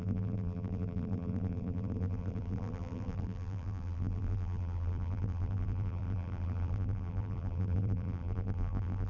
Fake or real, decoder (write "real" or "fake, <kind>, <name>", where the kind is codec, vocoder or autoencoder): fake, vocoder, BigVGAN v2